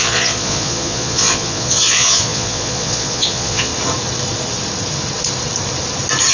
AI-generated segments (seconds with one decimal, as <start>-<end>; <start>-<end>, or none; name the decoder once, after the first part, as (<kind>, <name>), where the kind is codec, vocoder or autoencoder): 0.0-3.7 (vocoder, Vocos)